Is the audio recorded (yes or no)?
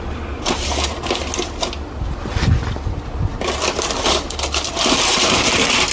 yes